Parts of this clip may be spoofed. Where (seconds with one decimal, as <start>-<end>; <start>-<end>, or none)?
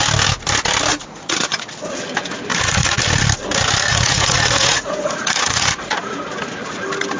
0.9-1.6; 2.5-3.0; 3.9-6.2